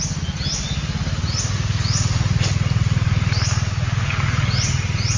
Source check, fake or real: real